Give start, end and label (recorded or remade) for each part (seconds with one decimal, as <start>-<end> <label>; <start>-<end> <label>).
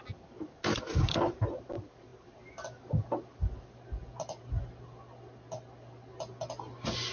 0.0-7.1 recorded